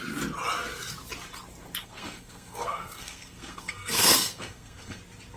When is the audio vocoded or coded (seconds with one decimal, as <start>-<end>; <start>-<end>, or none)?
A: 1.8-5.0